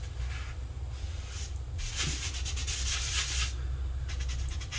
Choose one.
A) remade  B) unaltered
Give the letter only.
B